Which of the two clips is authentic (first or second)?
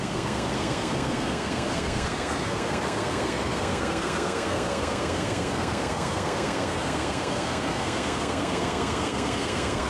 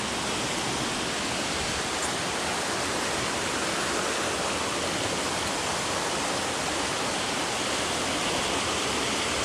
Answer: second